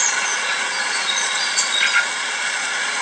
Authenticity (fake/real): fake